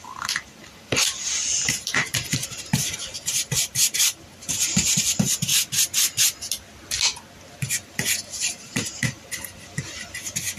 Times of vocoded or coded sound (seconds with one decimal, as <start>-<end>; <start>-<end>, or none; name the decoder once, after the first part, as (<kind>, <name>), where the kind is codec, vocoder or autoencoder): 0.0-5.5 (vocoder, BigVGAN v2); 8.2-10.6